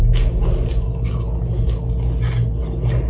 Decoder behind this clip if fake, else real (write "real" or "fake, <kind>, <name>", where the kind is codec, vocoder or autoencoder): real